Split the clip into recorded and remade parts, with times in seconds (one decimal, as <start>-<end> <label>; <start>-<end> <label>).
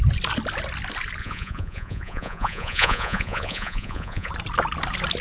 0.0-1.2 recorded; 1.2-4.3 remade; 4.3-5.2 recorded